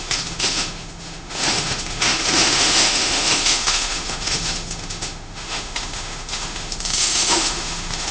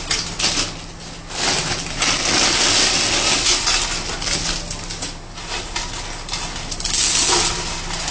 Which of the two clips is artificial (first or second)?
first